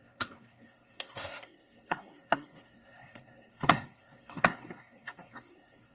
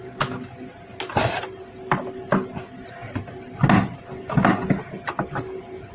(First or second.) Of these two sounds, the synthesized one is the first